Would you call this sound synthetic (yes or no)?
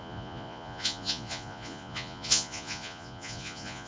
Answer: yes